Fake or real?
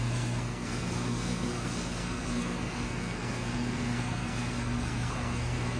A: fake